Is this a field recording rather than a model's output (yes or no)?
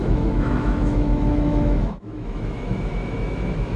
no